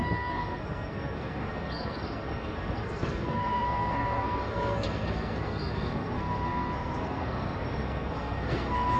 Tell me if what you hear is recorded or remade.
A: remade